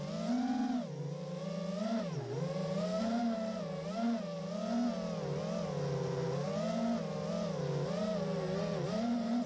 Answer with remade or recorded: recorded